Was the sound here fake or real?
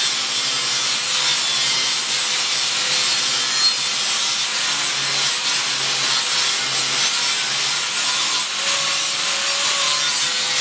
real